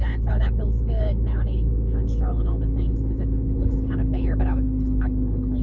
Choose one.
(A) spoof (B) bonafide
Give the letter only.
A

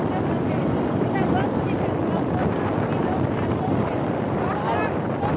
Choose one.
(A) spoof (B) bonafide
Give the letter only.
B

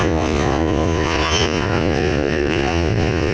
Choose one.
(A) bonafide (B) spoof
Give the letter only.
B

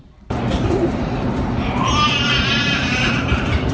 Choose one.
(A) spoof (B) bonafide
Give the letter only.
A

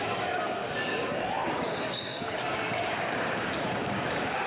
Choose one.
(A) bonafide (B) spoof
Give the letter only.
B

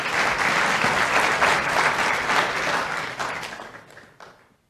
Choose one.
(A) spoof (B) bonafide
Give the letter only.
B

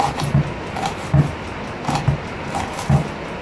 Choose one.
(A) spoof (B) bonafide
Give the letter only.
B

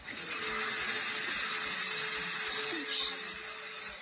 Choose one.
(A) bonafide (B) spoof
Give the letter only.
A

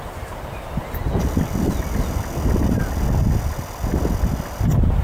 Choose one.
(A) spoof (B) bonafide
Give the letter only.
B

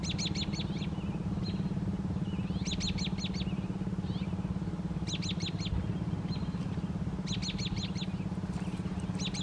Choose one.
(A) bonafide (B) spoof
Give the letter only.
A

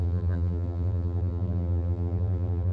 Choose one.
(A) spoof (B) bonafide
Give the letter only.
A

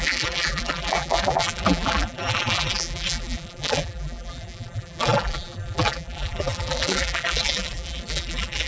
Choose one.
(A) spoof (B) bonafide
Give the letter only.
A